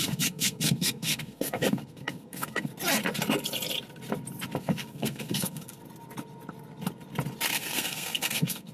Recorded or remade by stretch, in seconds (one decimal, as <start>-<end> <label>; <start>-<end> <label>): 0.0-2.7 remade; 2.7-4.6 recorded; 4.6-5.8 remade; 5.8-7.5 recorded; 7.5-8.7 remade